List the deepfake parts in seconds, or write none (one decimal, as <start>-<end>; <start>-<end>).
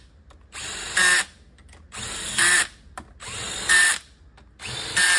none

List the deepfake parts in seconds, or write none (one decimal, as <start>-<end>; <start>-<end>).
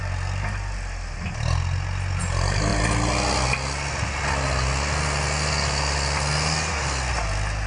none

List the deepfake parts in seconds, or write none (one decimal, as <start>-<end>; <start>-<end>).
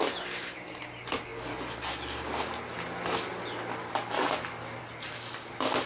none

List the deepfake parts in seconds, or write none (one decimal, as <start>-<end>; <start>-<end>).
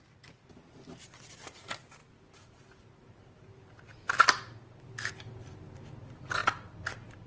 none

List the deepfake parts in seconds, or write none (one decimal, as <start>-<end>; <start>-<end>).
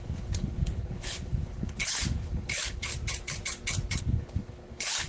0.0-2.9; 4.0-5.1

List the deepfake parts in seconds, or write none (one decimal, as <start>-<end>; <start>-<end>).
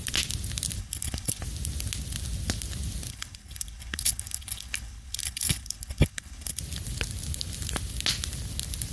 0.8-1.4; 3.1-6.6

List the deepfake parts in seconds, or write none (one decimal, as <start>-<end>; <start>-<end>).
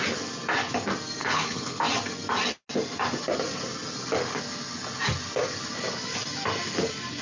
1.2-1.8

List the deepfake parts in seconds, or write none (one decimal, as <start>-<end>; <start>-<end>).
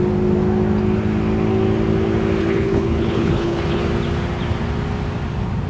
2.4-3.8